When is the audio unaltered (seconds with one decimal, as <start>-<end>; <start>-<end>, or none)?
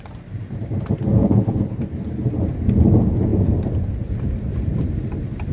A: 0.0-1.2; 1.8-5.5